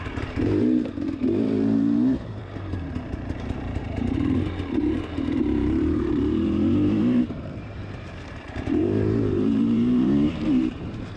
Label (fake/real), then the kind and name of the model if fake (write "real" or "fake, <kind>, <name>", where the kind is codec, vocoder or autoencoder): fake, vocoder, BigVGAN v2